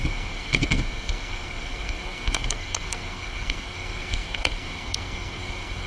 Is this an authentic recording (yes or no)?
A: no